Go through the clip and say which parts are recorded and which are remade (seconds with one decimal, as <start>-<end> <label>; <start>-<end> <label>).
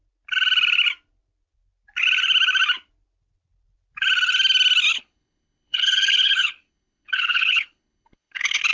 0.0-4.9 recorded; 4.9-8.7 remade